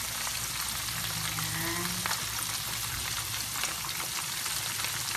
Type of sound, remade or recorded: recorded